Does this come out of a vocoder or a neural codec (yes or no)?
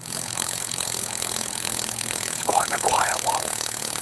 yes